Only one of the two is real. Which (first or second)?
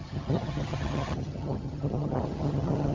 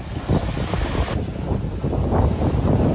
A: second